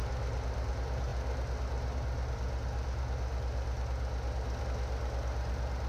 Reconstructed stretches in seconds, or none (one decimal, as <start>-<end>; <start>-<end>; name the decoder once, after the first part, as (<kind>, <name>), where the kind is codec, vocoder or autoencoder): none